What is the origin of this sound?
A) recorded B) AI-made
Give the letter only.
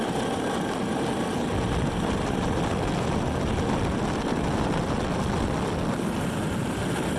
A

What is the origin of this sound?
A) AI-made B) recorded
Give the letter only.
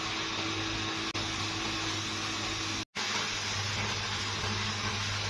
B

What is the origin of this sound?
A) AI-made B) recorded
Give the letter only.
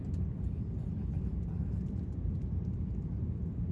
B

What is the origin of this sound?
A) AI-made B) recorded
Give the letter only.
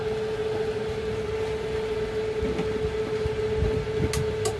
B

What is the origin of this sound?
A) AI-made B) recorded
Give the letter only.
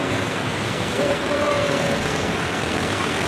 A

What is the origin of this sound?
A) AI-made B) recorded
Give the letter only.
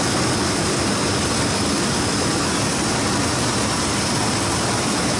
B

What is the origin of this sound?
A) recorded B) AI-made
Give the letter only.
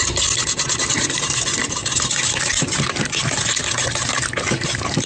A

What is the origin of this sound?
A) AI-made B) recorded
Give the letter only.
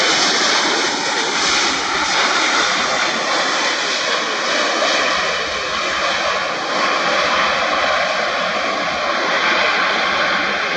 B